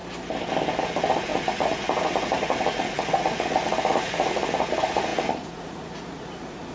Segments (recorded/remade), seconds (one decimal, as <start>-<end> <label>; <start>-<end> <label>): 0.0-0.8 recorded; 0.8-6.7 remade